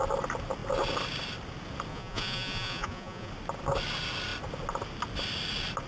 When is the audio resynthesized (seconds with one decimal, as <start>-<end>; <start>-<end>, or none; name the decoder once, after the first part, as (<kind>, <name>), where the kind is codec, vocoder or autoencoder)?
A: 1.9-3.3 (vocoder, Vocos)